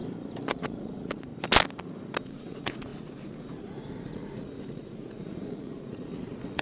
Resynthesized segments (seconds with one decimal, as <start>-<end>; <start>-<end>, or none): 0.5-1.3; 2.2-6.6